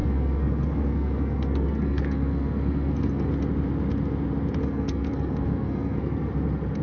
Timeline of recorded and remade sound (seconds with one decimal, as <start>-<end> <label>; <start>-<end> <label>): 0.0-3.3 remade; 3.3-4.6 recorded; 4.6-6.3 remade; 6.3-6.8 recorded